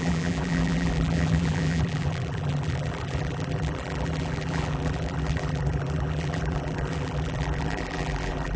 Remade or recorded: remade